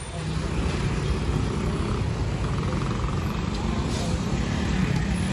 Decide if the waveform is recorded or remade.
recorded